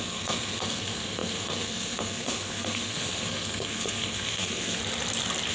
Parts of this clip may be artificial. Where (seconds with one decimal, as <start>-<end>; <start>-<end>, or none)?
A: 0.0-4.8